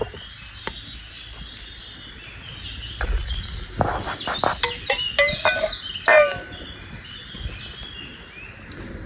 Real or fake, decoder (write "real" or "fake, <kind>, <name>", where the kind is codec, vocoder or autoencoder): real